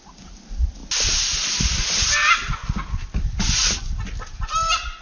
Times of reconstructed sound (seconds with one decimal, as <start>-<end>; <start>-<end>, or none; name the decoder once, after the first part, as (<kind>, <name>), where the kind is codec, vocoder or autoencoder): none